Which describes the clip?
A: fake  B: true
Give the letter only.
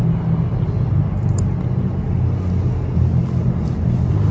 B